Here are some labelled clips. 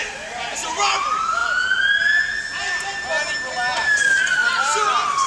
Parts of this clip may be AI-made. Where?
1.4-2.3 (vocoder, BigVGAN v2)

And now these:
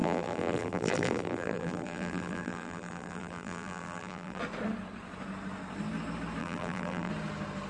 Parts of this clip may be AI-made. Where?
0.0-4.4 (vocoder, BigVGAN v2); 6.4-7.1

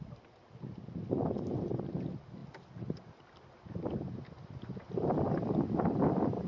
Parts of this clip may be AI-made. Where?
none

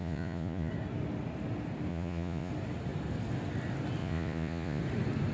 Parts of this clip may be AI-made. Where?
0.0-0.7 (vocoder, Vocos); 1.9-2.5; 4.0-4.8